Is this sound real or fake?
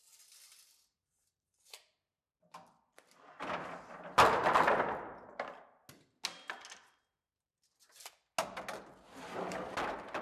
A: real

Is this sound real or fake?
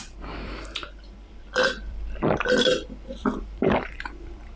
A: fake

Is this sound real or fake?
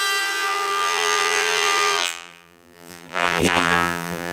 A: fake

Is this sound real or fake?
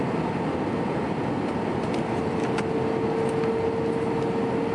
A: real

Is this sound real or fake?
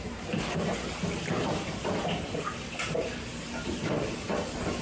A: real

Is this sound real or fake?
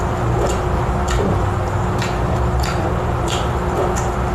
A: real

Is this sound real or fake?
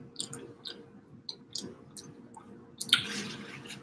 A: real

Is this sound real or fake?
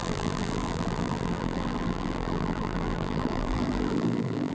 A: fake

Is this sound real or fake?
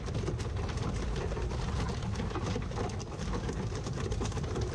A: fake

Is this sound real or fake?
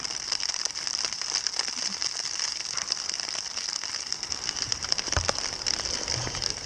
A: fake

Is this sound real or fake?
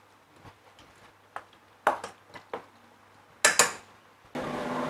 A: real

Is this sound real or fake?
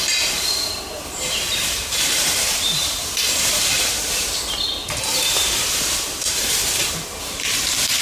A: fake